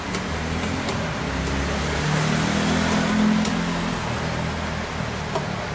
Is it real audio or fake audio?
real